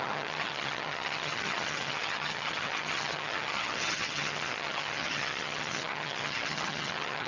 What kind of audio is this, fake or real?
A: fake